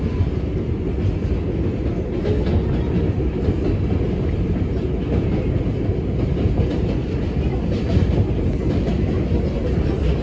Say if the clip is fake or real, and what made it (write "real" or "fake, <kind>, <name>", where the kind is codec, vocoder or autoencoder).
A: real